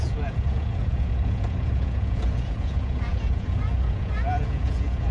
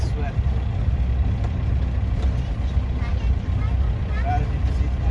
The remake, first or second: first